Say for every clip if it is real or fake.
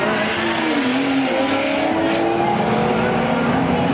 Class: real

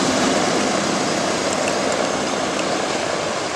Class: real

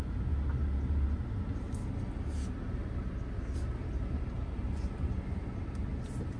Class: real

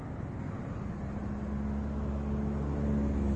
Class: real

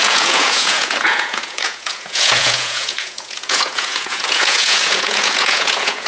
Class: fake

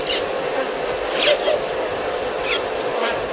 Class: real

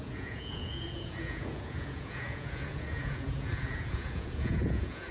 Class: fake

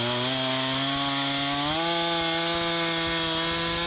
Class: real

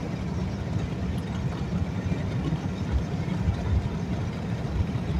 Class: real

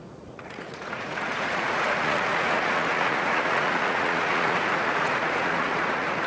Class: fake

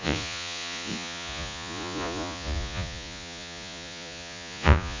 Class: fake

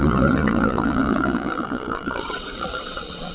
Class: fake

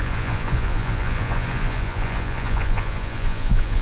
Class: fake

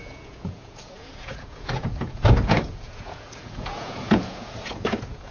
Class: fake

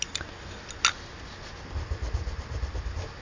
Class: real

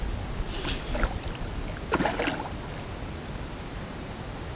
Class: real